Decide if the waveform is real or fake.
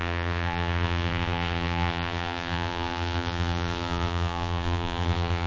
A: fake